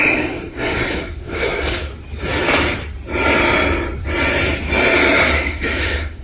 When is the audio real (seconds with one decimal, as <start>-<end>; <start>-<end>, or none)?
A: 1.9-5.2